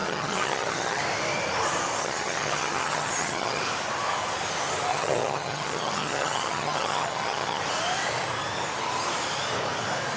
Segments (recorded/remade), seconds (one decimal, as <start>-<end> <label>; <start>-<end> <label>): 0.0-1.0 remade; 1.0-2.0 recorded; 2.0-3.6 remade; 3.6-4.9 recorded; 4.9-7.6 remade; 7.6-10.2 recorded